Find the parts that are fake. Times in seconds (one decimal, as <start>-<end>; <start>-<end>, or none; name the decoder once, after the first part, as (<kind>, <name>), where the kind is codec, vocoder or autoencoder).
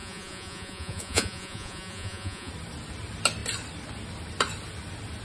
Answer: 0.0-2.5 (vocoder, Vocos)